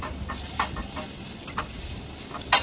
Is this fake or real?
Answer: real